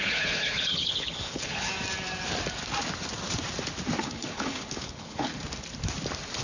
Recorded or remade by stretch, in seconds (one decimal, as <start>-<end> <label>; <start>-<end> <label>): 0.0-1.7 remade; 1.7-4.0 recorded; 4.0-5.3 remade; 5.3-6.4 recorded